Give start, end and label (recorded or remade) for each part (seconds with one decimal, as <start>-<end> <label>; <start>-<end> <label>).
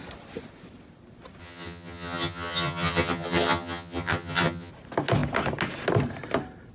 0.0-1.4 recorded; 1.4-4.7 remade; 4.7-6.7 recorded